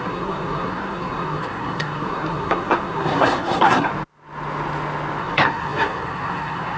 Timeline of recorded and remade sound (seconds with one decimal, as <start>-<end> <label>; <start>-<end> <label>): 0.0-3.9 remade; 3.9-5.2 recorded; 5.2-6.8 remade